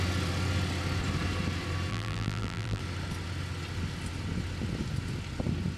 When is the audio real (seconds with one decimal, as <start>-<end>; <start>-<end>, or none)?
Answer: 0.0-1.9; 2.8-5.8